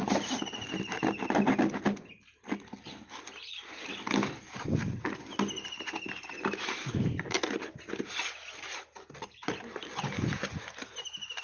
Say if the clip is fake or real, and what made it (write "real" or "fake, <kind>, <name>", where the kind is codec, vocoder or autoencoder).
real